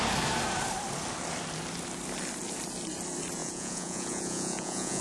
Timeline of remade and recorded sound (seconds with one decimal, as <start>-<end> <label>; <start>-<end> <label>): 0.0-3.4 recorded; 3.4-5.0 remade